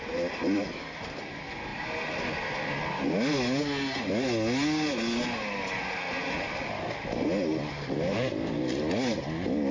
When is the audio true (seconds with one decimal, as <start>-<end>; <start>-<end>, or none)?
0.0-9.7